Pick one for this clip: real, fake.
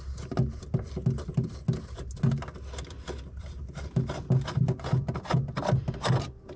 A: real